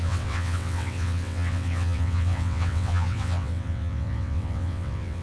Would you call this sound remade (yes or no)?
yes